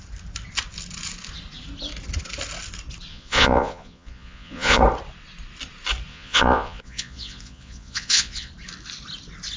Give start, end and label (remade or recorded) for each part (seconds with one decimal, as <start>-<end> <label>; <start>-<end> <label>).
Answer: 0.0-3.1 recorded; 3.1-4.8 remade; 4.8-6.1 recorded; 6.1-8.5 remade; 8.5-9.6 recorded